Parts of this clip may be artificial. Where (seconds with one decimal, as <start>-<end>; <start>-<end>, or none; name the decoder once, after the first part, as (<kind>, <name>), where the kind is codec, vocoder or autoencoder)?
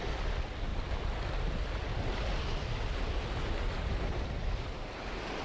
none